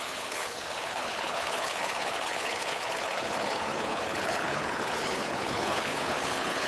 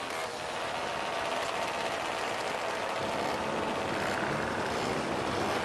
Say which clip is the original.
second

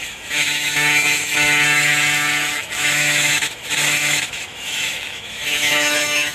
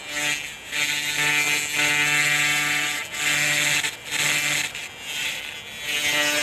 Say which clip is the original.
second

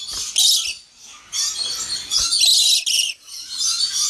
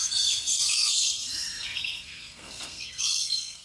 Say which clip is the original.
first